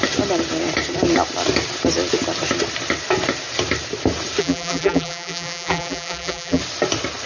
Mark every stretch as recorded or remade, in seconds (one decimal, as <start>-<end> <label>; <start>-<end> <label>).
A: 0.0-4.4 recorded; 4.4-6.6 remade; 6.6-7.3 recorded

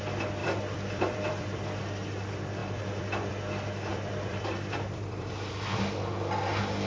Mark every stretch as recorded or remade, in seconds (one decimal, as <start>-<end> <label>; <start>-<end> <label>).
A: 0.0-0.4 recorded; 0.4-1.8 remade; 1.8-2.6 recorded; 2.6-3.3 remade; 3.3-3.9 recorded; 3.9-5.8 remade; 5.8-6.9 recorded